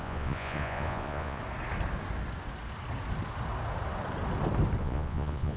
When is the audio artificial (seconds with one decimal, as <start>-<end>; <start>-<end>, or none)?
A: 0.0-1.4; 4.8-5.6